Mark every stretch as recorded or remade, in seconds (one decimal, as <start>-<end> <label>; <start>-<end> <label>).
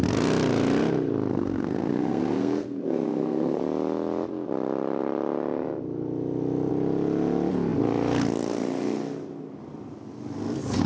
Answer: 0.0-1.3 recorded; 1.3-3.6 remade; 3.6-10.9 recorded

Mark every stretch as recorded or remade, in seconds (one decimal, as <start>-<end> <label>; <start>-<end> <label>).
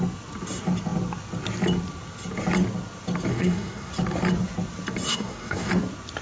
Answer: 0.0-3.3 recorded; 3.3-3.9 remade; 3.9-5.1 recorded; 5.1-5.7 remade; 5.7-6.2 recorded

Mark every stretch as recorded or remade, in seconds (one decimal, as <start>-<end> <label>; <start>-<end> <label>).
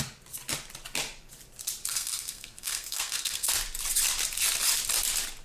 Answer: 0.0-1.9 recorded; 1.9-3.5 remade; 3.5-5.4 recorded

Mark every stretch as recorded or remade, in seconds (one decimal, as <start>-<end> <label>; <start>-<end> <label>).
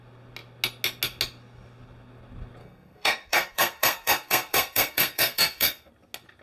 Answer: 0.0-2.6 recorded; 2.6-5.9 remade; 5.9-6.4 recorded